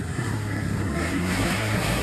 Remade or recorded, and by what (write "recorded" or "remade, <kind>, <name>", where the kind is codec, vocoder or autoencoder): remade, codec, SNAC